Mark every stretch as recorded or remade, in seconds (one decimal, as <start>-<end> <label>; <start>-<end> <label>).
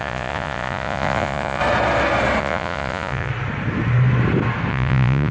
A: 0.0-1.6 remade; 1.6-2.4 recorded; 2.4-3.3 remade; 3.3-4.7 recorded; 4.7-5.3 remade